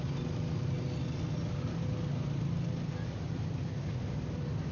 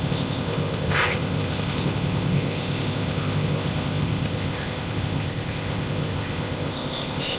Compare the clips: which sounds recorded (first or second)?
first